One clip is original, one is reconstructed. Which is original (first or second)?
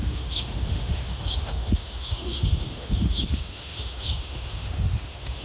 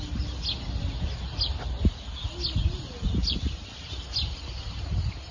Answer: second